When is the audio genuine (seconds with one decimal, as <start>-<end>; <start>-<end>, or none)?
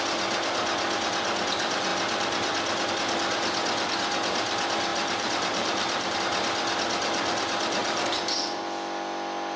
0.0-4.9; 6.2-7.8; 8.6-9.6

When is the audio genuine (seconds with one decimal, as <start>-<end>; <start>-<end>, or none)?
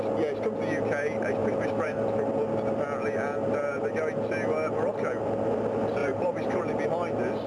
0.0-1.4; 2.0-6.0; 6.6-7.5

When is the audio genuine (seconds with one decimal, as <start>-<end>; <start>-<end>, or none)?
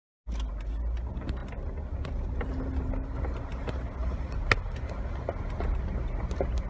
0.0-4.0; 4.8-6.7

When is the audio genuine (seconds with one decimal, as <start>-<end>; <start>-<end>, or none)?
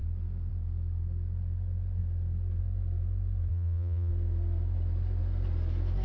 0.0-3.5; 4.1-6.0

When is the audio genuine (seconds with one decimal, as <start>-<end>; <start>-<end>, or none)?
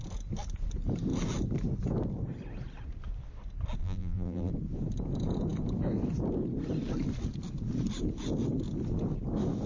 0.0-3.8; 4.5-9.7